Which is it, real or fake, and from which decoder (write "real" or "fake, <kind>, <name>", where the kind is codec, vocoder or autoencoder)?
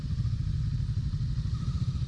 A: real